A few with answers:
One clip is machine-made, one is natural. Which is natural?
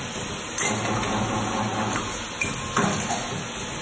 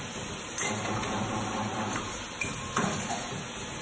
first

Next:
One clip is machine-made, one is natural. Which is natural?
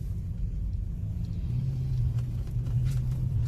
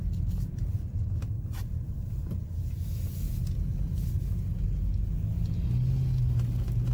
second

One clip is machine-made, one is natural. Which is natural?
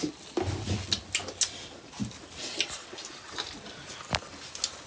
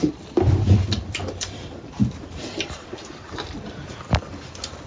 first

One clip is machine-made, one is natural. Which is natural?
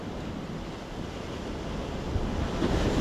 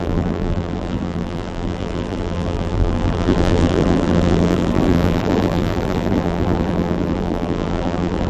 first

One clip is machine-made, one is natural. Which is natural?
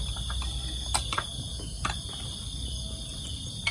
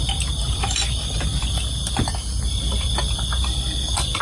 first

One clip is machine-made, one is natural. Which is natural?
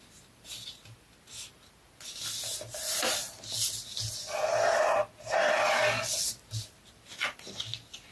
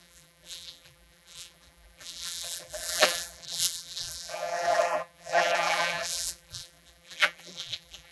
first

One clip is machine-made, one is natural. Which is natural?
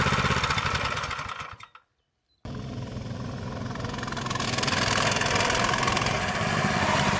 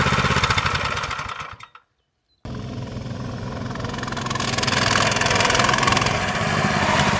second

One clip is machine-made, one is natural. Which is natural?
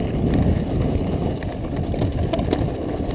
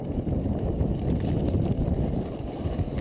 first